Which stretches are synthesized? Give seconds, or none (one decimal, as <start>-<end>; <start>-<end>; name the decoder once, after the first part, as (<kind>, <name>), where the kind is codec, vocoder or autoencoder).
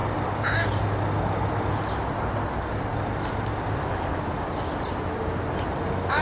none